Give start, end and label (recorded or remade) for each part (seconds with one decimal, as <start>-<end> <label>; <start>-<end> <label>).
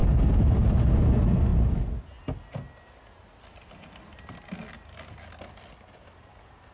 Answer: 0.0-6.7 recorded